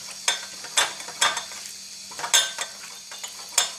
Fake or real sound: real